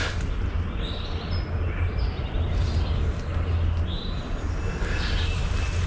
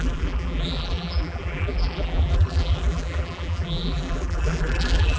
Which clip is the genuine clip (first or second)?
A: first